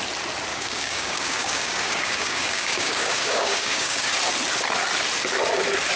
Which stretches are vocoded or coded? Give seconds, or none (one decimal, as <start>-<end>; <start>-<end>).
0.5-4.1